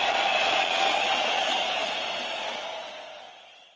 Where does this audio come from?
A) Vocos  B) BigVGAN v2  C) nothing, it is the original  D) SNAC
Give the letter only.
A